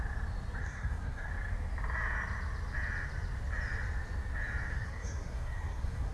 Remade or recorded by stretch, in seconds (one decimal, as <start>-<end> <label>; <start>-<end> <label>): 0.0-0.6 recorded; 0.6-1.3 remade; 1.3-4.7 recorded; 4.7-6.1 remade